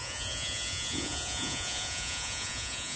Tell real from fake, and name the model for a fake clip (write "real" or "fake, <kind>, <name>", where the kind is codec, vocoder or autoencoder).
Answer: fake, vocoder, Vocos